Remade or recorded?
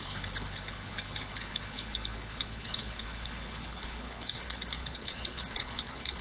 remade